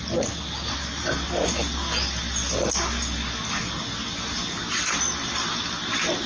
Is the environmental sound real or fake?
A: real